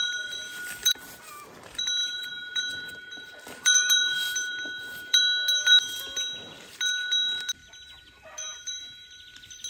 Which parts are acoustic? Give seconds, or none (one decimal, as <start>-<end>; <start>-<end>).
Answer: 0.0-0.8; 1.3-2.0; 5.2-7.6; 8.8-9.7